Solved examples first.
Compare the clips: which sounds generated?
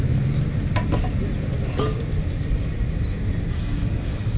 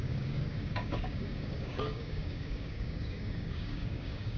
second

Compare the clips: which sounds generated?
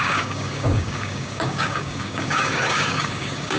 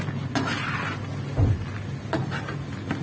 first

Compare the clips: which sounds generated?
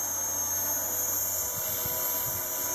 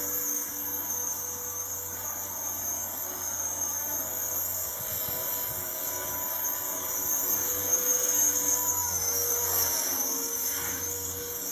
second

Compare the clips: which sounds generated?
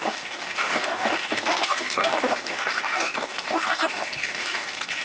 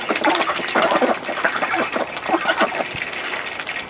first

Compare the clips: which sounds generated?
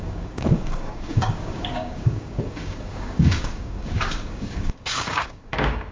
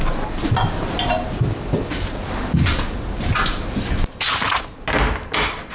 first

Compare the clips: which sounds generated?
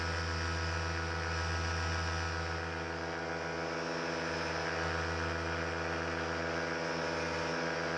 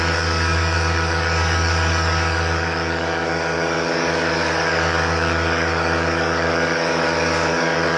second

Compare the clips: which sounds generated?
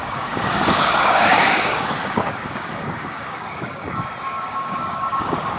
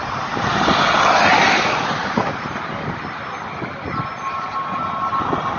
first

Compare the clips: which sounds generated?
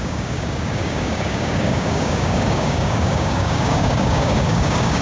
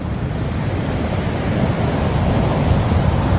first